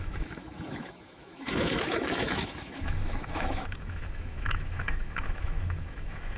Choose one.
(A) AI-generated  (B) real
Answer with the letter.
A